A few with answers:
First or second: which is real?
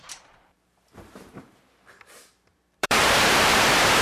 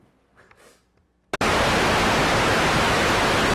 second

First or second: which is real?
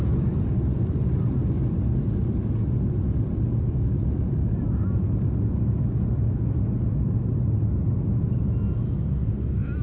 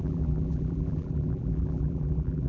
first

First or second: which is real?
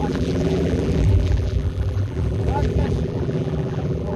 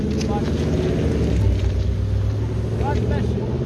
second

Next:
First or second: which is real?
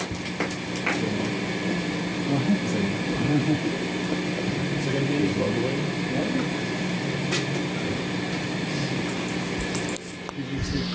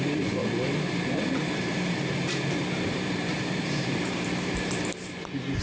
first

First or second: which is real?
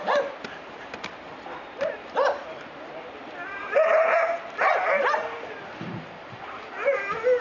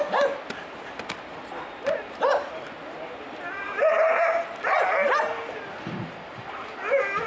second